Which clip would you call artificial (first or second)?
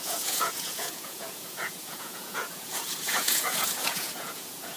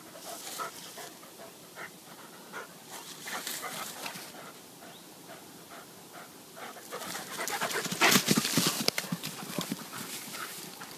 first